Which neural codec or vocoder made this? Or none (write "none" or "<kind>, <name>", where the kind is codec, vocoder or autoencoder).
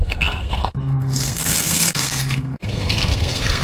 codec, SNAC